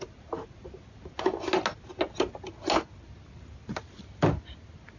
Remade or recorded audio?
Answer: recorded